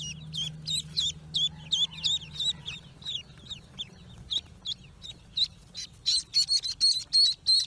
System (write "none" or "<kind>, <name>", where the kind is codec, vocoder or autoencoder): none